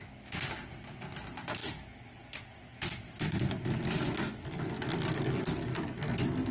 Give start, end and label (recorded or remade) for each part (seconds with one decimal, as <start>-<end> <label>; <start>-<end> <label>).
0.0-6.5 recorded

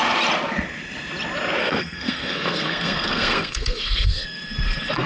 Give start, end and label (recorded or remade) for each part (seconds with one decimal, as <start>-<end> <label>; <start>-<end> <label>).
0.0-1.6 recorded; 1.6-5.1 remade

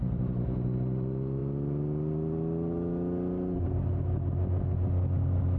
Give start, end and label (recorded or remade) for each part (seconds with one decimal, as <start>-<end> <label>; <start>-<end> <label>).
0.0-5.6 recorded

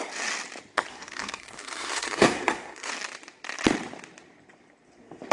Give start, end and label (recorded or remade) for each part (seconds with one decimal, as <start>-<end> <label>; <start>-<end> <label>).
0.0-0.9 recorded; 0.9-2.9 remade; 2.9-5.3 recorded

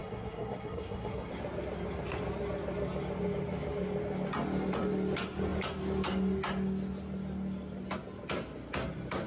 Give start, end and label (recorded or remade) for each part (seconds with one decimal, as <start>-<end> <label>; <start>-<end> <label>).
0.0-1.3 remade; 1.3-9.3 recorded

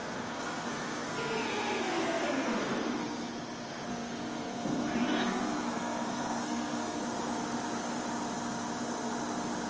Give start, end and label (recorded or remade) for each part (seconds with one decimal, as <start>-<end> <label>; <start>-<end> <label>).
0.0-3.3 remade; 3.3-3.9 recorded; 3.9-7.0 remade; 7.0-9.7 recorded

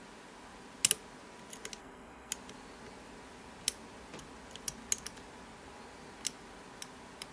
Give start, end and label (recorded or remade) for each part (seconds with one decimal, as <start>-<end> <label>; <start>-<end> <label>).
0.0-1.8 recorded; 1.8-2.3 remade; 2.3-7.3 recorded